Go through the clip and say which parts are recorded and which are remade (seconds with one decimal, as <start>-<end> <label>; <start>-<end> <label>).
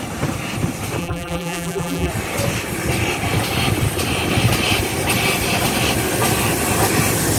0.0-1.0 recorded; 1.0-2.1 remade; 2.1-7.4 recorded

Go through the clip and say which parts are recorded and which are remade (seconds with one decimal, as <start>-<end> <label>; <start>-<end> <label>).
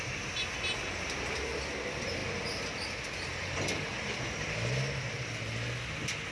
0.0-6.3 recorded